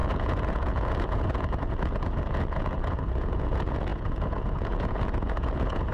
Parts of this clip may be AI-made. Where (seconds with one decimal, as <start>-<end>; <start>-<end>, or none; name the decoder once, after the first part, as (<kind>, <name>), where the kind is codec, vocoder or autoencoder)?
0.0-5.9 (vocoder, Vocos)